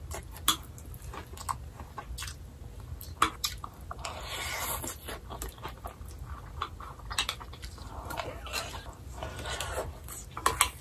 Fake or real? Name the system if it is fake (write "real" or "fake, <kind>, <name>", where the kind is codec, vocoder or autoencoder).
real